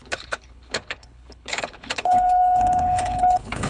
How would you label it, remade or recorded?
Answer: remade